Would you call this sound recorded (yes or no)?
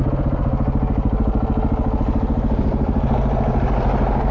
yes